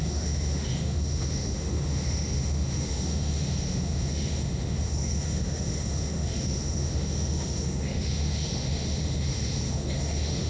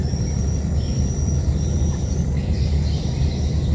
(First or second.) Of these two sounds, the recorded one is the second